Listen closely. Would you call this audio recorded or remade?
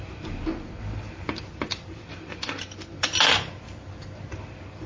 remade